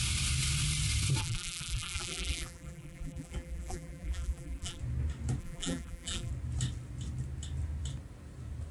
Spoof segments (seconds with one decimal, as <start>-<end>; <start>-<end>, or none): 1.2-4.8; 5.4-6.3